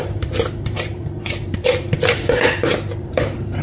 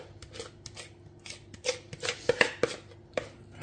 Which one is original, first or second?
second